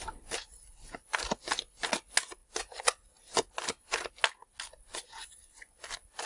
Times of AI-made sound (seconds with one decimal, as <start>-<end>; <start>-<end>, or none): 4.9-5.8